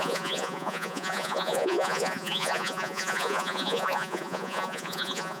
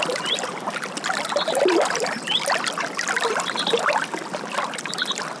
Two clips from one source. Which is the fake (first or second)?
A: first